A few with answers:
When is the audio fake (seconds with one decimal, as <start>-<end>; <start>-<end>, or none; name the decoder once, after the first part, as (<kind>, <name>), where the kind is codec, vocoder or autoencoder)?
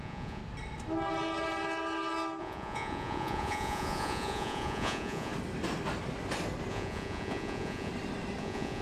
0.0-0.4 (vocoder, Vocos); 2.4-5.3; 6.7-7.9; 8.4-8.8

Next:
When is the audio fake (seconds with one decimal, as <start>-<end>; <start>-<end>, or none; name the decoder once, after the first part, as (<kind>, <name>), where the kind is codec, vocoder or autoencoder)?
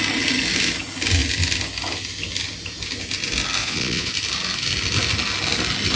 3.6-4.1 (vocoder, Vocos)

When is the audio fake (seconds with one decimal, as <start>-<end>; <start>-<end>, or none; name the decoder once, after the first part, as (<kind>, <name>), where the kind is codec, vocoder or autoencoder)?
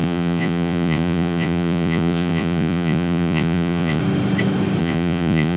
0.0-4.0 (vocoder, Vocos); 4.8-5.6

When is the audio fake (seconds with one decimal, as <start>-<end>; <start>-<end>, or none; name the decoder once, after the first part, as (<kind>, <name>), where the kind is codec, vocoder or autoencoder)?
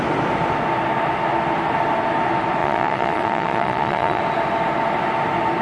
2.6-4.2 (vocoder, Vocos)